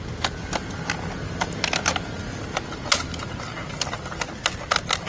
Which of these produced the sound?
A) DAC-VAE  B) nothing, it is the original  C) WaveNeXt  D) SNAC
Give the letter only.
B